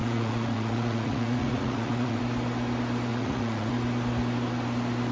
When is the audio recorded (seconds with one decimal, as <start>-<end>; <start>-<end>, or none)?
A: 2.2-3.1; 3.7-5.1